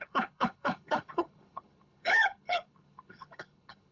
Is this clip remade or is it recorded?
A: remade